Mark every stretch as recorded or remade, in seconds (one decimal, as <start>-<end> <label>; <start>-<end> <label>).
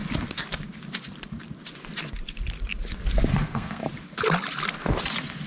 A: 0.0-3.3 recorded; 3.3-3.8 remade; 3.8-5.5 recorded